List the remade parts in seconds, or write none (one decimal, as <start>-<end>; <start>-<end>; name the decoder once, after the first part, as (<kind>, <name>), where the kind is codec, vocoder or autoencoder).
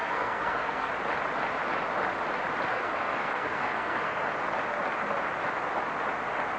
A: 0.0-0.9 (codec, SNAC); 2.7-4.3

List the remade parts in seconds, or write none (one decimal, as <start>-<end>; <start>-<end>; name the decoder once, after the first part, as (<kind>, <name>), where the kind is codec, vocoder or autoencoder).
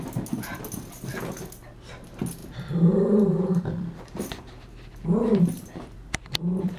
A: 2.4-6.8 (vocoder, BigVGAN v2)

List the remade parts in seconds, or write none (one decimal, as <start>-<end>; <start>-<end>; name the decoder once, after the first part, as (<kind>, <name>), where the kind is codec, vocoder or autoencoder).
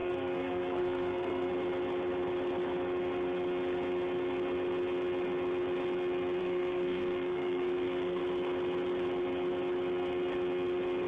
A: 0.0-1.5 (codec, SNAC); 6.4-8.2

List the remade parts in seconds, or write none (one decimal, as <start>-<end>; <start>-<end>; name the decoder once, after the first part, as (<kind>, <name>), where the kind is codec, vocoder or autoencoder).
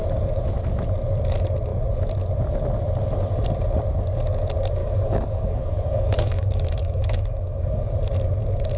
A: 4.8-7.9 (codec, DAC)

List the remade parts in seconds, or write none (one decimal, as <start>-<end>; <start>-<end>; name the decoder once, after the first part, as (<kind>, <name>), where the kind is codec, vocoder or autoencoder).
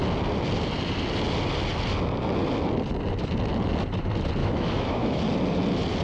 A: 4.4-5.2 (autoencoder, DAC-VAE)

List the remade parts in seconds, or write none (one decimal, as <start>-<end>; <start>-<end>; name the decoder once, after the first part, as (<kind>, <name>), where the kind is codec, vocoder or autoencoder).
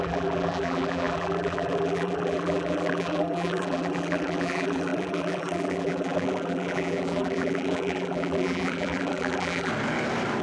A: 0.0-9.7 (vocoder, BigVGAN v2)